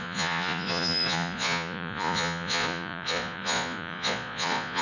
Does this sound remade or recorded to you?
remade